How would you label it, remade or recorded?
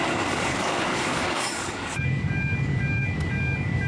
remade